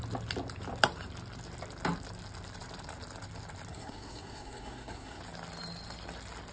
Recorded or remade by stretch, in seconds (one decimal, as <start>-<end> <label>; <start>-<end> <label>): 0.0-3.7 recorded; 3.7-5.2 remade; 5.2-6.5 recorded

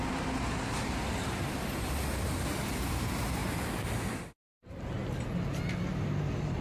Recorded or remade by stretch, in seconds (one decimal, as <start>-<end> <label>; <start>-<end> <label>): 0.0-6.6 recorded

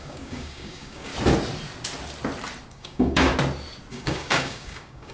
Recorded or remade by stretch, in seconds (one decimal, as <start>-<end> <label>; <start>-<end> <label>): 0.0-1.1 remade; 1.1-2.7 recorded; 2.7-3.3 remade; 3.3-3.9 recorded; 3.9-5.1 remade

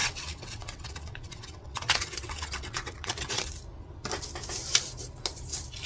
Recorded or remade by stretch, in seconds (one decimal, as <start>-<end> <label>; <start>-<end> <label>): 0.0-3.5 remade; 3.5-5.9 recorded

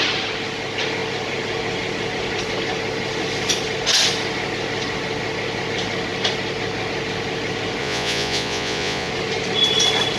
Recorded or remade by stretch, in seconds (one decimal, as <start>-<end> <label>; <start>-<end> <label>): 0.0-7.8 recorded; 7.8-9.1 remade; 9.1-10.2 recorded

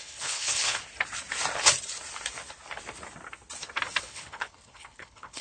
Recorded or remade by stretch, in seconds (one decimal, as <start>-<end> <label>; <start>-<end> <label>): 0.0-0.8 remade; 0.8-4.0 recorded; 4.0-5.4 remade

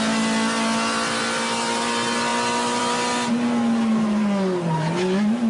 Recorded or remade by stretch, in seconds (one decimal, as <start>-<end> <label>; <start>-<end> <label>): 0.0-5.5 recorded

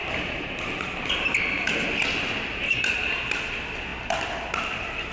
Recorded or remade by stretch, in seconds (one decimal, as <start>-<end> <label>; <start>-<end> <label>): 0.0-5.1 recorded